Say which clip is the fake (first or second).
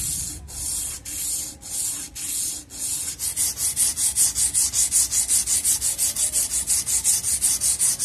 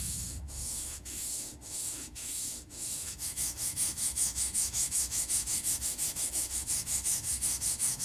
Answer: second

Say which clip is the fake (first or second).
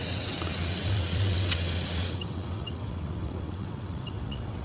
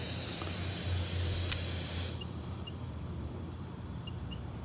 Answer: first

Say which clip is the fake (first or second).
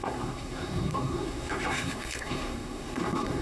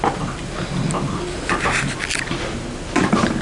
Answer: first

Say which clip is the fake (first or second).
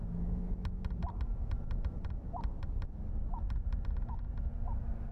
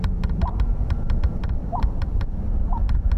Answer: second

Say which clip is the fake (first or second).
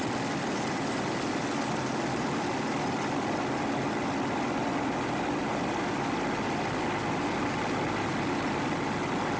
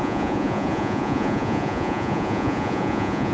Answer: second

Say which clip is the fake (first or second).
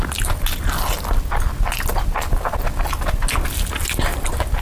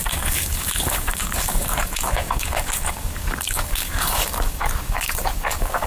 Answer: second